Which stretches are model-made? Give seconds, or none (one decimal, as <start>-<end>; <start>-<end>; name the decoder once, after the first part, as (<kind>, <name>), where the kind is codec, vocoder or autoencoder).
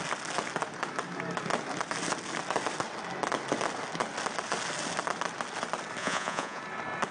6.0-6.6 (vocoder, Vocos)